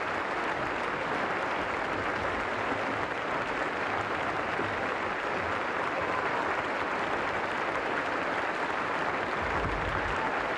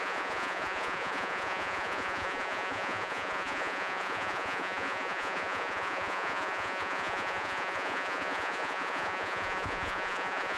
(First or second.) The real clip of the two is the first